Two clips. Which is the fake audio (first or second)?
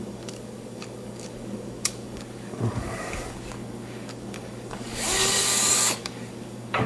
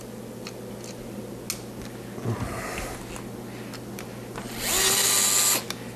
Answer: first